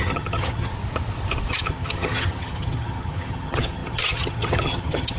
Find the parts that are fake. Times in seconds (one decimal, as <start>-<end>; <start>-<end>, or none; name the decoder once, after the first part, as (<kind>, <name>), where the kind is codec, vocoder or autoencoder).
0.0-0.7 (vocoder, HiFi-GAN); 1.5-5.2